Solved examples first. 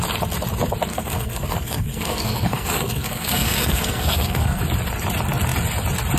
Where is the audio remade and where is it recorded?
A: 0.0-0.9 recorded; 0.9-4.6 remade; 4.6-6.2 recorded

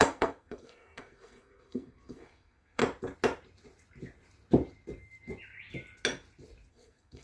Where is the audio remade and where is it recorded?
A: 0.0-2.8 remade; 2.8-6.7 recorded; 6.7-7.2 remade

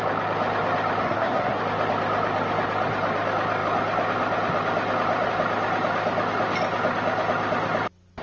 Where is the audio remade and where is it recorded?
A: 0.0-1.0 recorded; 1.0-1.6 remade; 1.6-8.2 recorded

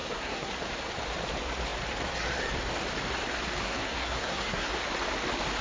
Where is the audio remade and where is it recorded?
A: 0.0-0.5 remade; 0.5-3.6 recorded; 3.6-4.7 remade; 4.7-5.6 recorded

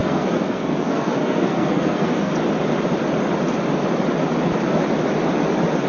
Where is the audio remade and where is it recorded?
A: 0.0-2.3 remade; 2.3-5.9 recorded

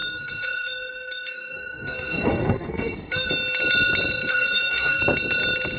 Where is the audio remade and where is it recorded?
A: 0.0-3.3 remade; 3.3-4.3 recorded; 4.3-5.0 remade; 5.0-5.8 recorded